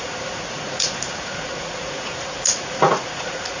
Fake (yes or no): yes